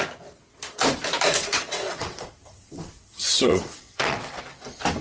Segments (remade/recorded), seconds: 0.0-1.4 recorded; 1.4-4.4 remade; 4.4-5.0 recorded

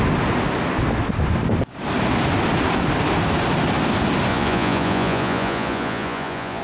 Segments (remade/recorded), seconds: 0.0-4.3 recorded; 4.3-6.6 remade